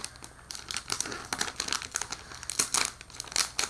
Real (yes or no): yes